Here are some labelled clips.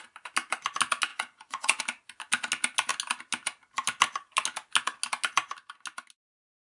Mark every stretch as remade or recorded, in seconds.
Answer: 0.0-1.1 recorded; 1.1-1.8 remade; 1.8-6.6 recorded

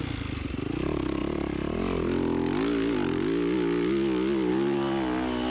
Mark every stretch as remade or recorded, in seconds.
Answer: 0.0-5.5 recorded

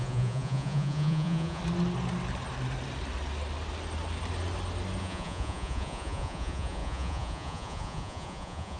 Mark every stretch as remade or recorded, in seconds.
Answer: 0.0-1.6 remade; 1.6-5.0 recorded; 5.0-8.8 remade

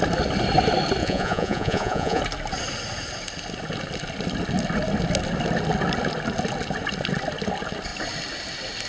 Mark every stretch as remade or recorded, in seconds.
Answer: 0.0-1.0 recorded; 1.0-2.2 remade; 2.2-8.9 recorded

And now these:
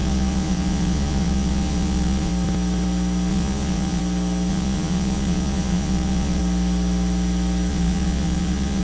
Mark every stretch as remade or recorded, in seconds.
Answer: 0.0-2.3 remade; 2.3-3.3 recorded; 3.3-4.0 remade; 4.0-4.5 recorded; 4.5-6.4 remade; 6.4-7.7 recorded; 7.7-8.8 remade